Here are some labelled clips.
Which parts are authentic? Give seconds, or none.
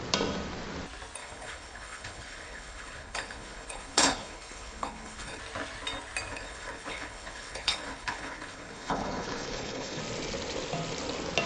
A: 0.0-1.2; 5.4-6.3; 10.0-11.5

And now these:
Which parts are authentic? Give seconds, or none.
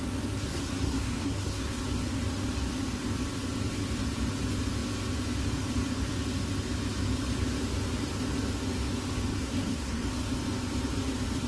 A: 0.0-0.5; 1.8-9.3; 10.1-11.5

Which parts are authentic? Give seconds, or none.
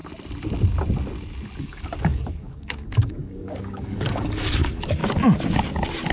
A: 0.0-1.6; 5.0-6.1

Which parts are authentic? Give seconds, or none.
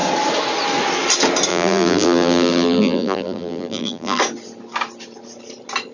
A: 0.0-1.5; 4.2-5.9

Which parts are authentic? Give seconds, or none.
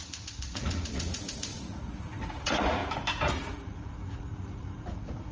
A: 2.8-3.3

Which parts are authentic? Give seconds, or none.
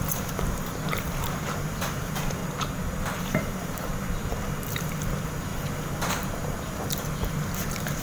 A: 2.4-3.2; 3.9-4.7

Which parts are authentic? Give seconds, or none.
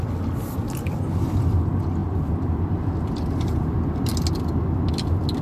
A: 0.0-2.0; 3.6-5.4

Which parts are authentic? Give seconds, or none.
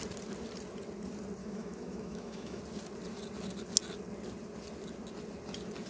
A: 0.0-1.4; 2.6-5.9